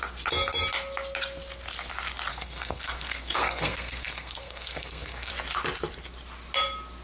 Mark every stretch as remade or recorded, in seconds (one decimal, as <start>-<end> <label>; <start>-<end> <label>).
0.0-2.3 recorded; 2.3-5.3 remade; 5.3-7.0 recorded